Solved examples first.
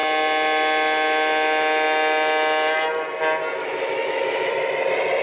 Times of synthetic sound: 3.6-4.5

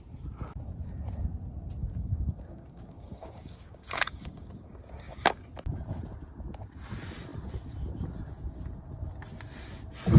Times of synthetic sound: 1.8-5.4

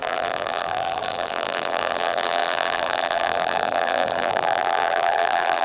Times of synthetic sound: 0.0-5.6

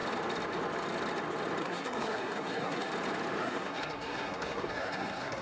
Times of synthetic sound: 1.6-2.9; 3.4-5.4

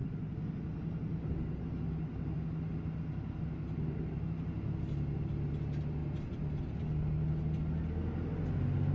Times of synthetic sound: none